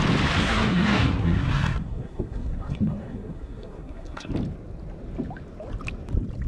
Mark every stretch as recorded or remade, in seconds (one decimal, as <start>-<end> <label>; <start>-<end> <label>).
0.0-0.4 recorded; 0.4-4.3 remade; 4.3-6.5 recorded